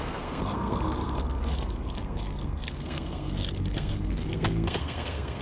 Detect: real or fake fake